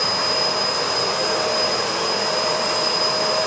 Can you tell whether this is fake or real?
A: fake